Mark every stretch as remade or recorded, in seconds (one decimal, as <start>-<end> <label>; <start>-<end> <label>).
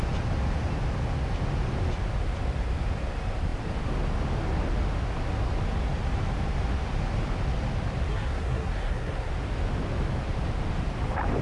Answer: 0.0-8.1 recorded; 8.1-9.3 remade; 9.3-11.4 recorded